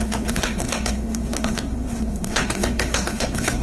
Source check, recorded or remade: remade